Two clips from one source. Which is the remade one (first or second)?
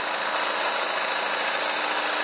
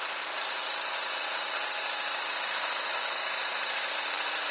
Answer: second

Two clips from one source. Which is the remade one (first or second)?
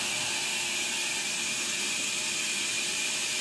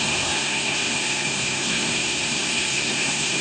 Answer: second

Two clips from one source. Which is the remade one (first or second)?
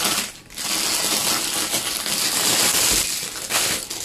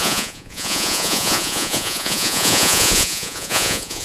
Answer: second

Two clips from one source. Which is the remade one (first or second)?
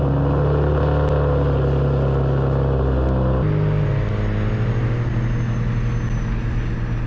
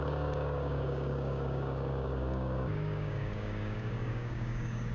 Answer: second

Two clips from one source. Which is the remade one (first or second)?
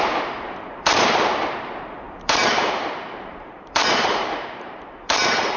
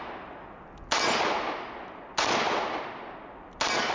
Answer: first